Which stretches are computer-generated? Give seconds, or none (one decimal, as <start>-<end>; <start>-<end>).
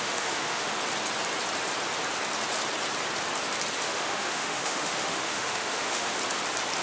0.0-0.7; 3.8-6.1